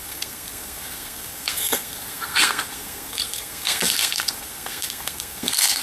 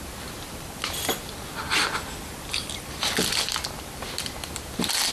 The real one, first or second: second